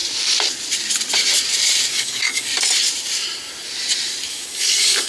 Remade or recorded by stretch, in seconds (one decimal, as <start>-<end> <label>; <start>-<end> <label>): 0.0-1.9 recorded; 1.9-2.5 remade; 2.5-4.3 recorded; 4.3-5.1 remade

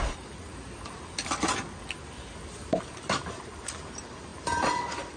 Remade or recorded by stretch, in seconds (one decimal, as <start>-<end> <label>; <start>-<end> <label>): 0.0-5.2 recorded

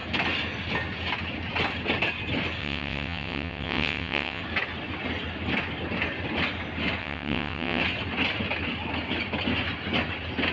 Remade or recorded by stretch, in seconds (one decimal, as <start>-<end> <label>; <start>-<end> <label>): 0.0-2.6 recorded; 2.6-4.4 remade; 4.4-7.0 recorded; 7.0-7.8 remade; 7.8-10.5 recorded

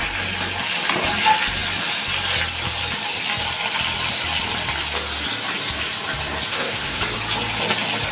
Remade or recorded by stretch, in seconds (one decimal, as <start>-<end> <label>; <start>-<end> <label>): 0.0-6.5 recorded; 6.5-7.0 remade; 7.0-8.1 recorded

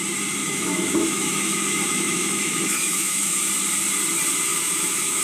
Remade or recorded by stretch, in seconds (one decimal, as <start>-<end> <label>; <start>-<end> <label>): 0.0-0.4 recorded; 0.4-3.5 remade; 3.5-4.5 recorded; 4.5-5.2 remade